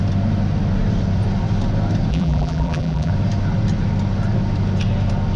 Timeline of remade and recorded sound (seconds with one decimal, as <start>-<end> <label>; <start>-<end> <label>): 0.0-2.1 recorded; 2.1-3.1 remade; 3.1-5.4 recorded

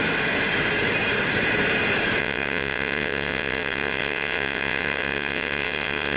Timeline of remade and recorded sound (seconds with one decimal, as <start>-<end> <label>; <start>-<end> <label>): 0.0-2.2 recorded; 2.2-6.2 remade

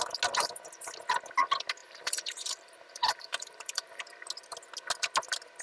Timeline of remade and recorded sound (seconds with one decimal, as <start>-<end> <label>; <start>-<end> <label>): 0.0-1.8 recorded; 1.8-4.0 remade; 4.0-5.6 recorded